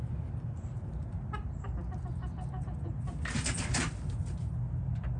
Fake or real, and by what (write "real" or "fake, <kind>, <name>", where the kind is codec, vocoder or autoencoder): real